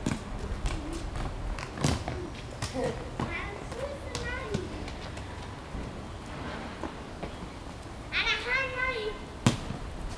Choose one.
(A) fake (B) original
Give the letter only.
B